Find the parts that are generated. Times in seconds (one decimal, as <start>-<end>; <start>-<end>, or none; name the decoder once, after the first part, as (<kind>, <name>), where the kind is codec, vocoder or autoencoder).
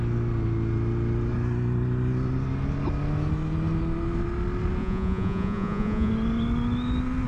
4.8-6.1 (vocoder, Vocos)